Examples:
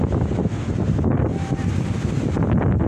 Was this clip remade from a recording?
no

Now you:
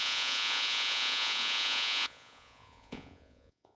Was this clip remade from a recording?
yes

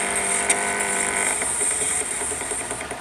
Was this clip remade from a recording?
yes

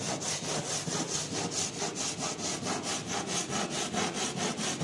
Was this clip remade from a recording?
no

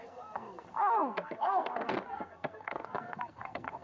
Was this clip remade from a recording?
yes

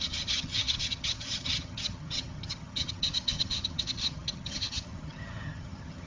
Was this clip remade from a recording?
yes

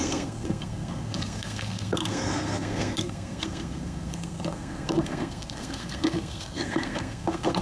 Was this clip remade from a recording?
yes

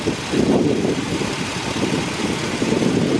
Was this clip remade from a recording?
no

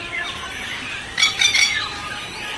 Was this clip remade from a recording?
yes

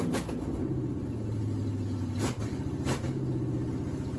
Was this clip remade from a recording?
no